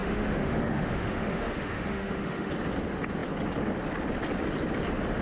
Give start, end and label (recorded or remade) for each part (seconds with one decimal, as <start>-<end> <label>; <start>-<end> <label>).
0.0-2.5 remade; 2.5-5.2 recorded